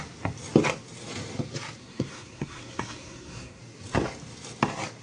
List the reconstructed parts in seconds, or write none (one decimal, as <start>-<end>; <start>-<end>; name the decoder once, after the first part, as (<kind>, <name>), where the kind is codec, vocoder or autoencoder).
1.8-3.6 (codec, SNAC)